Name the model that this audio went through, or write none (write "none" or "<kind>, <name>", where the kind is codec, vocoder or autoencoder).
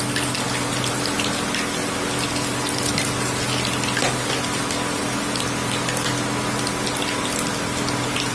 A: none